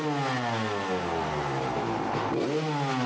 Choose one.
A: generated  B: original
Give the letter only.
B